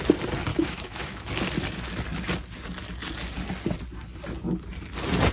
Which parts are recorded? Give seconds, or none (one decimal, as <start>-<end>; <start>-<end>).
0.0-0.5; 1.3-5.3